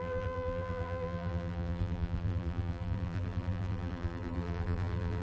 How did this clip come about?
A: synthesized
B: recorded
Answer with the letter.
A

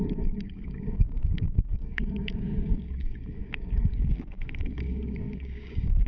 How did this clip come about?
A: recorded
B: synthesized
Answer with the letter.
B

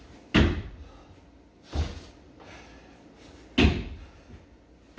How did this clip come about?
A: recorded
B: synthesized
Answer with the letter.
A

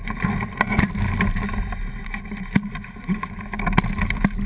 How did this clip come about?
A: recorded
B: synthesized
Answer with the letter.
A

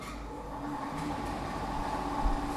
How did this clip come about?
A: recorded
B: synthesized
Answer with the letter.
A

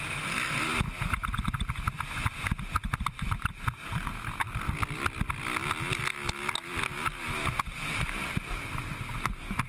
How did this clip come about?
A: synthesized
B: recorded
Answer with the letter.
B